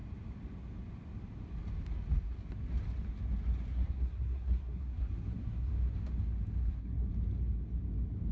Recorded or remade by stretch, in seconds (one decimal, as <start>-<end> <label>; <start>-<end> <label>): 0.0-3.7 recorded; 3.7-5.7 remade; 5.7-6.6 recorded; 6.6-7.1 remade; 7.1-8.3 recorded